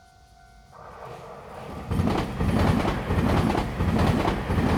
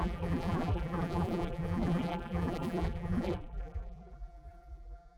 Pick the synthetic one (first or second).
second